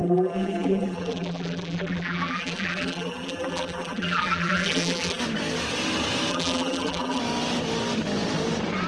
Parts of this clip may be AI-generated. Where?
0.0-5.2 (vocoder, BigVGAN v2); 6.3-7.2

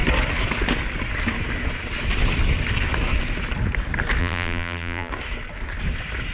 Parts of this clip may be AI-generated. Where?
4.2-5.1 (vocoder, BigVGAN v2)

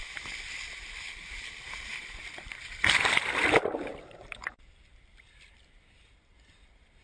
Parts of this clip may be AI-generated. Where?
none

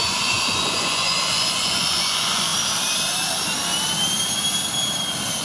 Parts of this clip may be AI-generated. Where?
0.0-2.5 (vocoder, Vocos)